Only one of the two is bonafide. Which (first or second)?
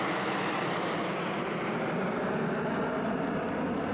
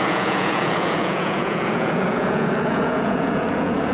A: first